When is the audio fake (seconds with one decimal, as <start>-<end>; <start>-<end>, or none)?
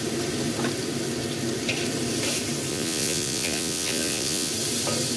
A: 2.7-4.5